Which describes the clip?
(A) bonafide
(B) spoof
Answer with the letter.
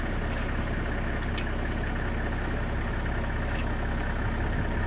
A